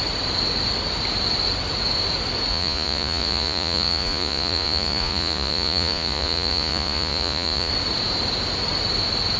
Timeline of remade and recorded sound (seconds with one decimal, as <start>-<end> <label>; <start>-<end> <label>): 0.0-2.5 recorded; 2.5-7.7 remade; 7.7-9.4 recorded